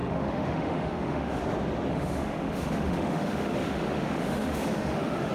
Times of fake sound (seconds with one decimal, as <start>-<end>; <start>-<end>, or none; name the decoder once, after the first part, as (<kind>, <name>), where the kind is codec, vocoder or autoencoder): 0.0-1.4 (autoencoder, DAC-VAE); 1.9-5.3